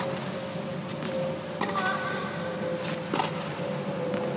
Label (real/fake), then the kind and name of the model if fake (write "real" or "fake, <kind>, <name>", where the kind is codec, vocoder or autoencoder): real